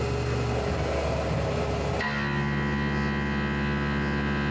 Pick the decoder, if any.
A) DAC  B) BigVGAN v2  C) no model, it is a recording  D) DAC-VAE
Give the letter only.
C